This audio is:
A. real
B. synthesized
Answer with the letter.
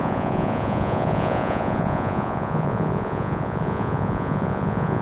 B